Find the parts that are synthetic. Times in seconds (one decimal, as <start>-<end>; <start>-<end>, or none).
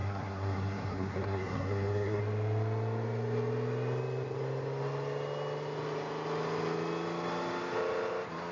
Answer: 0.0-2.2